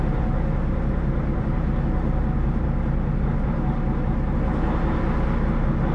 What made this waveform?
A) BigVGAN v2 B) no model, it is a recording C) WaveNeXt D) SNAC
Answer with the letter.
B